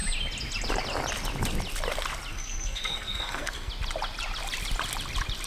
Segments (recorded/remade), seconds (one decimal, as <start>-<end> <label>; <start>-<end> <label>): 0.0-2.3 recorded; 2.3-3.7 remade; 3.7-5.5 recorded